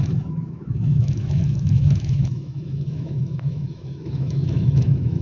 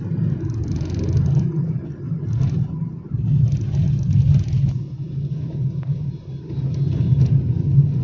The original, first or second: second